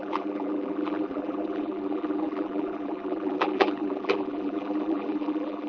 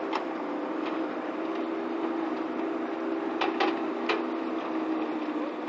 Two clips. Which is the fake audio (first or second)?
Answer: first